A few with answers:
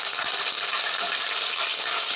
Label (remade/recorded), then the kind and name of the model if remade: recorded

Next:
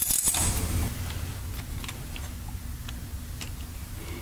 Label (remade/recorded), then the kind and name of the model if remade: recorded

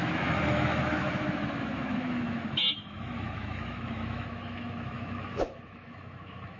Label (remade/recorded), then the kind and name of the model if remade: remade, autoencoder, DAC-VAE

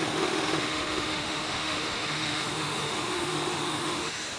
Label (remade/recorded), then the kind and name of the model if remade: remade, autoencoder, DAC-VAE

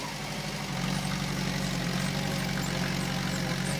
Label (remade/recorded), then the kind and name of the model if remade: recorded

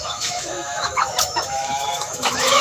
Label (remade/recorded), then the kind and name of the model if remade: remade, autoencoder, DAC-VAE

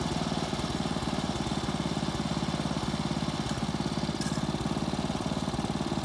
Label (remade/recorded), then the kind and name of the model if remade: recorded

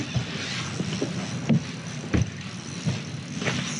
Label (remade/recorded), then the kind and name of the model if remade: recorded